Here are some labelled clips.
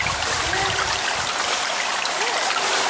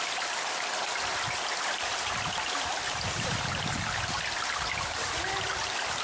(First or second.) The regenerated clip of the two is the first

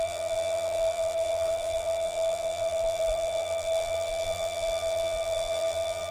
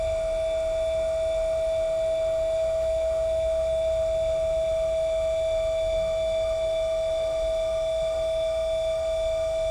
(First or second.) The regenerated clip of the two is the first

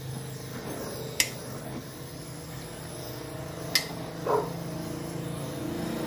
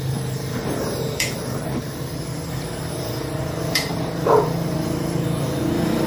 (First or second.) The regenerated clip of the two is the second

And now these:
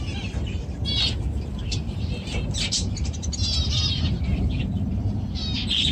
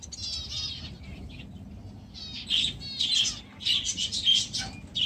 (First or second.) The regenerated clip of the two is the first